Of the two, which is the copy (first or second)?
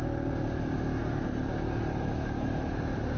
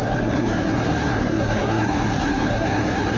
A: second